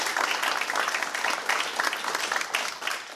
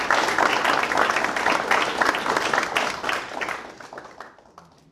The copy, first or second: first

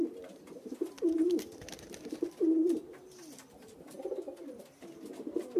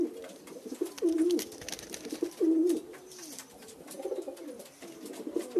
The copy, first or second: first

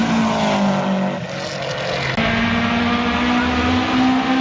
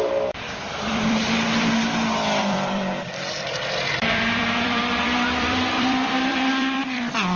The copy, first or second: second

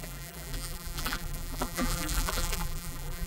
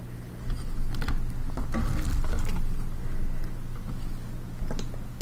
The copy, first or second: first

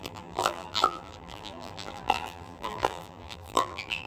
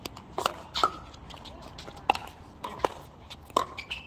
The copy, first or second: first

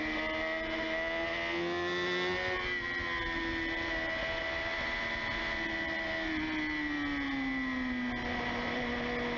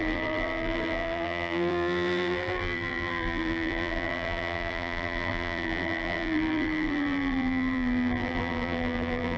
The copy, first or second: second